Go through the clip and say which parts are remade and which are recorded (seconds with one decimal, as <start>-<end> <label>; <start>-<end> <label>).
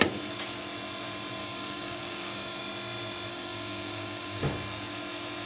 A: 0.0-1.4 recorded; 1.4-2.6 remade; 2.6-3.3 recorded; 3.3-4.4 remade; 4.4-5.5 recorded